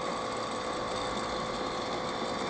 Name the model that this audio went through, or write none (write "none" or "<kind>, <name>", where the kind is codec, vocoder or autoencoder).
none